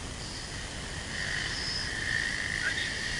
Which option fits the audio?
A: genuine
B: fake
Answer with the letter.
A